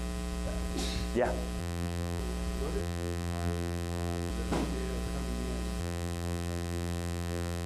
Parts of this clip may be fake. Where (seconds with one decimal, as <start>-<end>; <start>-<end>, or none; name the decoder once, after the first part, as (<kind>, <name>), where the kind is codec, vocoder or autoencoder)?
1.6-2.2 (vocoder, BigVGAN v2); 2.8-4.3; 5.8-7.7